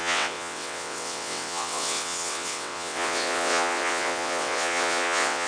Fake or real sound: fake